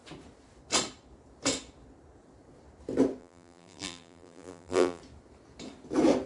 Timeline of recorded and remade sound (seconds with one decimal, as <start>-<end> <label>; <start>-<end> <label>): 0.0-3.2 recorded; 3.2-5.0 remade; 5.0-6.3 recorded